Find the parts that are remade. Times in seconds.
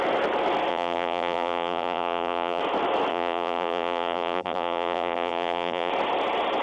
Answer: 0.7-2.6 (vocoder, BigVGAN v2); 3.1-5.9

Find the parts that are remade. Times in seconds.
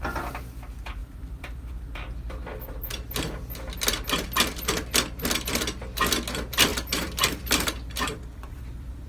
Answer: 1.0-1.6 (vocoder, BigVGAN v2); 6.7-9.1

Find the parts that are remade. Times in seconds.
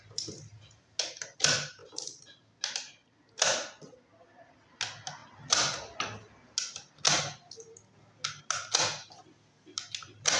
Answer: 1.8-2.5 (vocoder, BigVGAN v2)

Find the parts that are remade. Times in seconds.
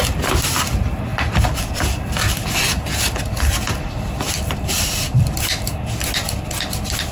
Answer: 1.1-5.4 (vocoder, BigVGAN v2)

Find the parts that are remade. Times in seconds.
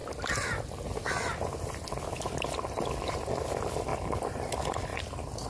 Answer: 3.9-4.5 (vocoder, BigVGAN v2); 4.9-5.5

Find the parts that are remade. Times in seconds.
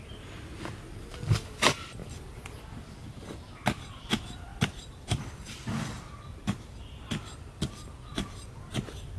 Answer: 4.5-5.8 (vocoder, BigVGAN v2)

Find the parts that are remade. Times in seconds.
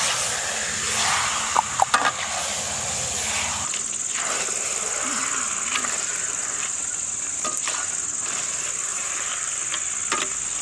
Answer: 5.7-6.8 (vocoder, BigVGAN v2); 8.9-9.6